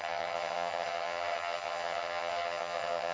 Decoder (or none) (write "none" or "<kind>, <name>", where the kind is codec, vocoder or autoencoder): vocoder, HiFi-GAN